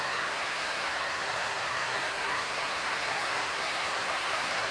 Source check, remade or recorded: remade